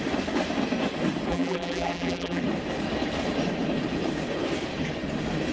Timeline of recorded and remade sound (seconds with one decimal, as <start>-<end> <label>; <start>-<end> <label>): 0.0-1.3 recorded; 1.3-2.4 remade; 2.4-5.5 recorded